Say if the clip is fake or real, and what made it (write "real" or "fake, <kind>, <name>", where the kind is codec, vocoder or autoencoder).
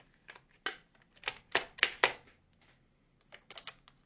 real